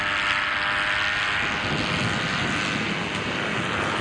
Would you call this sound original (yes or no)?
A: yes